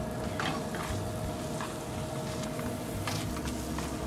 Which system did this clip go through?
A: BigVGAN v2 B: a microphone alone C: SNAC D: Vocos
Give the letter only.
B